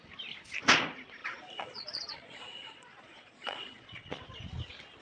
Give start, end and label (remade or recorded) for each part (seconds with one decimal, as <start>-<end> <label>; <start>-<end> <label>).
0.0-1.2 recorded; 1.2-4.2 remade; 4.2-5.0 recorded